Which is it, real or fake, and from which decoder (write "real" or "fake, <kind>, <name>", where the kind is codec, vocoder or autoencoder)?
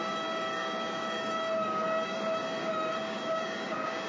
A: fake, codec, DAC